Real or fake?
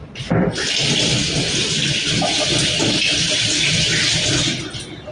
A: real